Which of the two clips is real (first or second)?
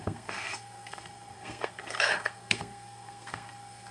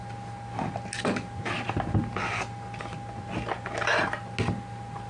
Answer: second